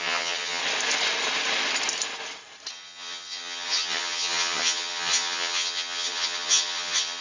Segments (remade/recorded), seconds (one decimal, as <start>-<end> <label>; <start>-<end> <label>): 0.0-0.6 remade; 0.6-2.7 recorded; 2.7-7.2 remade